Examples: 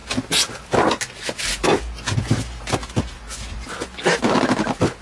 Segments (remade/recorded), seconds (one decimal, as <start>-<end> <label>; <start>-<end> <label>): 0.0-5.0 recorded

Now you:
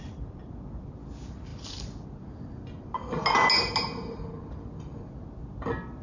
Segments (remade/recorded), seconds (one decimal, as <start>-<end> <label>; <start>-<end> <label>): 0.0-6.0 recorded

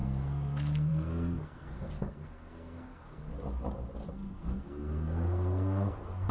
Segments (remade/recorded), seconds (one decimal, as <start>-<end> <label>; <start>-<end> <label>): 0.0-3.3 remade; 3.3-4.1 recorded; 4.1-6.3 remade

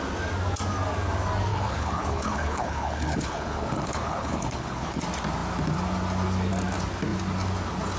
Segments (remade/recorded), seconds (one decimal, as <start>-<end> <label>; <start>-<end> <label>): 0.0-1.5 recorded; 1.5-5.0 remade; 5.0-8.0 recorded

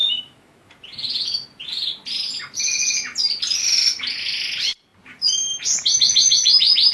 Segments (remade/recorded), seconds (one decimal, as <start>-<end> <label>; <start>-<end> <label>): 0.0-0.7 remade; 0.7-6.9 recorded

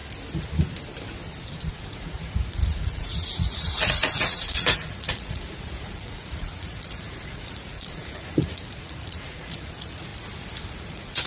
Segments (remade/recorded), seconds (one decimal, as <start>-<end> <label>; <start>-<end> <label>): 0.0-1.7 recorded; 1.7-10.1 remade; 10.1-10.7 recorded; 10.7-11.3 remade